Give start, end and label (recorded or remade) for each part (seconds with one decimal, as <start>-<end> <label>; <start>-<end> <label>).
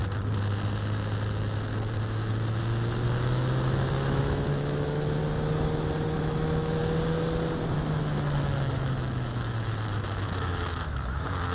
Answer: 0.0-2.3 recorded; 2.3-5.2 remade; 5.2-6.2 recorded; 6.2-6.8 remade; 6.8-8.0 recorded; 8.0-11.5 remade